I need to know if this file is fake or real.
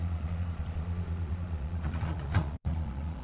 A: fake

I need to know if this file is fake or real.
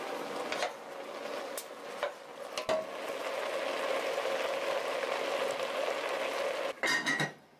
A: real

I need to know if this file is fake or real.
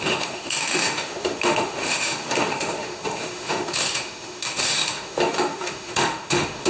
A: fake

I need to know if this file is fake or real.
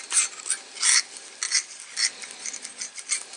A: real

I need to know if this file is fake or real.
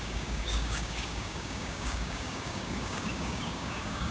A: fake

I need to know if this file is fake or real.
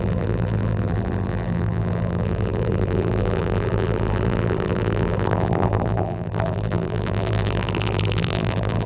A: fake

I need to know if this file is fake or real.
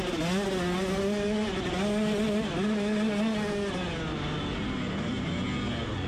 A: real